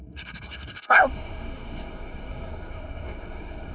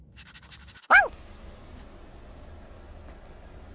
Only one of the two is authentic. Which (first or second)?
second